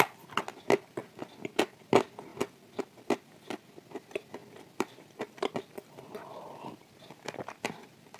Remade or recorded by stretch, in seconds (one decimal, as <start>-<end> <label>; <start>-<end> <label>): 0.0-2.3 recorded; 2.3-3.3 remade; 3.3-4.4 recorded; 4.4-6.8 remade; 6.8-8.2 recorded